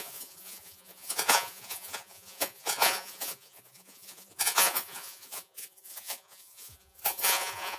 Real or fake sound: fake